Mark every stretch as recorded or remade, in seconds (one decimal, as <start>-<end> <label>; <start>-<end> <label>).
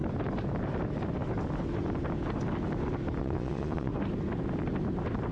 0.0-3.2 recorded; 3.2-3.9 remade; 3.9-5.3 recorded